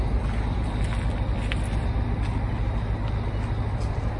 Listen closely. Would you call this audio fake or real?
real